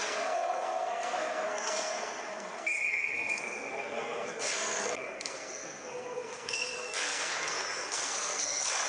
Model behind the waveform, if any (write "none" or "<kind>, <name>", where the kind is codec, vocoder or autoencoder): codec, SNAC